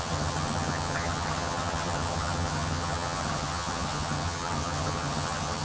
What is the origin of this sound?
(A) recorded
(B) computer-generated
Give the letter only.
B